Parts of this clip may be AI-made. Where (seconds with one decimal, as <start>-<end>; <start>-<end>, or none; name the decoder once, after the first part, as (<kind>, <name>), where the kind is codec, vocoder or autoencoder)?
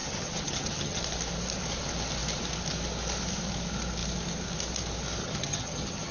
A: 0.0-1.0 (vocoder, HiFi-GAN); 5.2-6.1